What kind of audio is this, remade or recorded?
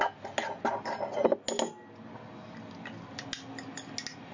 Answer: recorded